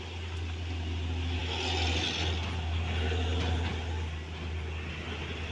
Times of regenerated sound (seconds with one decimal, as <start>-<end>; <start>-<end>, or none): none